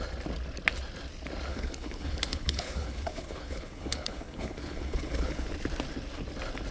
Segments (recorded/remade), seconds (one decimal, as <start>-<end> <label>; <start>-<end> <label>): 0.0-1.5 recorded; 1.5-5.5 remade; 5.5-6.7 recorded